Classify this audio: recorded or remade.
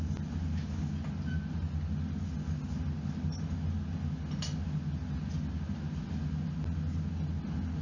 recorded